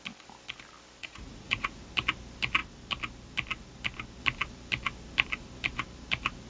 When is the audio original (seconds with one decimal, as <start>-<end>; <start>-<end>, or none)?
0.0-1.0; 1.9-6.5